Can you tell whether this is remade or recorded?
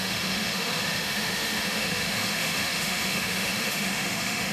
remade